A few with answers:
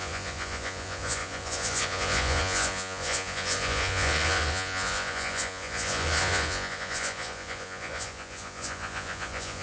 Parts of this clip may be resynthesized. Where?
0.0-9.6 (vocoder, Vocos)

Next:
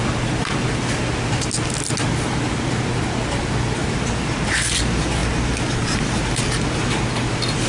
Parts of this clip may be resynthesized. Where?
none

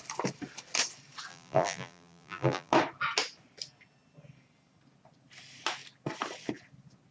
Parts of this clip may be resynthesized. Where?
1.3-2.7 (vocoder, BigVGAN v2)

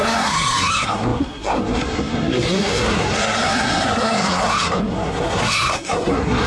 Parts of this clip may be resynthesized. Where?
0.0-6.5 (codec, SNAC)

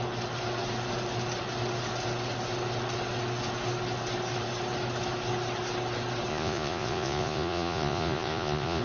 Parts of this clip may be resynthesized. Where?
6.3-8.8 (vocoder, Vocos)

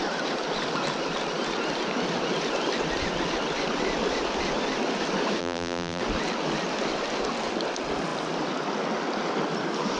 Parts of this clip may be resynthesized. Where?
5.4-6.0 (vocoder, BigVGAN v2)

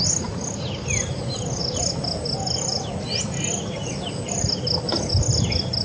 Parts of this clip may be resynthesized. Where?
none

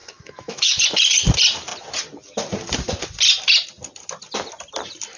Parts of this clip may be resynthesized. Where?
0.0-0.8 (autoencoder, DAC-VAE)